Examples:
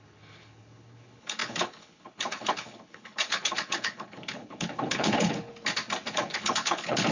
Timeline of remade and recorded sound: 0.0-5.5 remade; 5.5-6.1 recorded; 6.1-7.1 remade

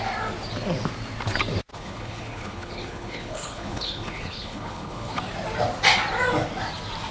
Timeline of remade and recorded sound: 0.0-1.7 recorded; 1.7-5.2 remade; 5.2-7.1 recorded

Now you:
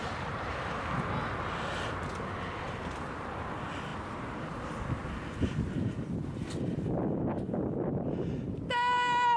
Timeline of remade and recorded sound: 0.0-9.4 recorded